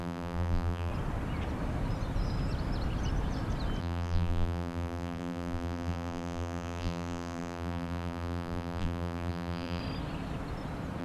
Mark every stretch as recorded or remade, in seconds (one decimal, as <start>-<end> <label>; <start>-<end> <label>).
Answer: 0.0-0.9 remade; 0.9-3.8 recorded; 3.8-9.8 remade; 9.8-11.0 recorded

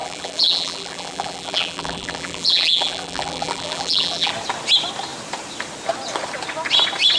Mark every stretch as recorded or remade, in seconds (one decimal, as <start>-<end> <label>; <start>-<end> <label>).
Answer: 0.0-4.3 remade; 4.3-7.2 recorded

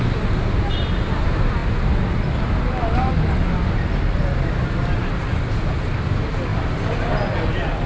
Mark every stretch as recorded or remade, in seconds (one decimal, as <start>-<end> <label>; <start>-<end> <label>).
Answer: 0.0-7.9 recorded